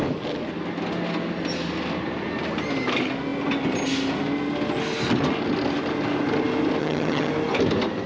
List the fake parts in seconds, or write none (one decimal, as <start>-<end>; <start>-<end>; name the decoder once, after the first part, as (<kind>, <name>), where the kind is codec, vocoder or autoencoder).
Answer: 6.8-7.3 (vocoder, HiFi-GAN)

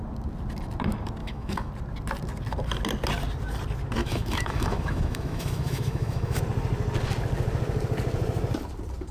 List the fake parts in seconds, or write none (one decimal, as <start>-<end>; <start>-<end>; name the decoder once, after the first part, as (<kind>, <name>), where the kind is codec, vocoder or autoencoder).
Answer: 1.2-1.7 (autoencoder, DAC-VAE); 4.0-6.4

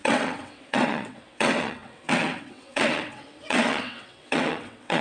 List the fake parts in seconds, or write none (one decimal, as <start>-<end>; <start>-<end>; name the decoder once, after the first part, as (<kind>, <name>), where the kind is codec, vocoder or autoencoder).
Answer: 0.0-5.0 (vocoder, WaveNeXt)

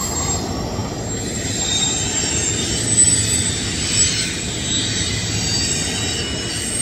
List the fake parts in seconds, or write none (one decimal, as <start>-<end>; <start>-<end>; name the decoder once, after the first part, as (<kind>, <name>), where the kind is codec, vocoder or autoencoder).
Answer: none